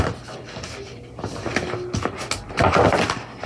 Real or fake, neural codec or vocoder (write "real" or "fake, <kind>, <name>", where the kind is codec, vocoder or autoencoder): real